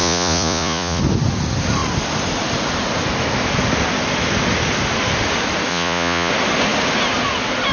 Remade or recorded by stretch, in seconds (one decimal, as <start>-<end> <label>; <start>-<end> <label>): 0.0-1.0 remade; 1.0-5.7 recorded; 5.7-6.3 remade; 6.3-7.7 recorded